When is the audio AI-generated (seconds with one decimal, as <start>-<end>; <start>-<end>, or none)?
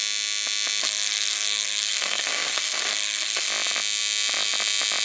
0.8-3.5